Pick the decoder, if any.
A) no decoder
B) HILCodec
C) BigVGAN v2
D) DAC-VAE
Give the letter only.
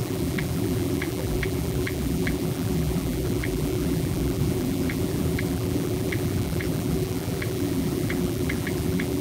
C